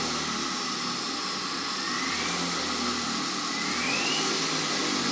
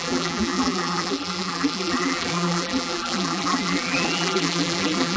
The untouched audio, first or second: first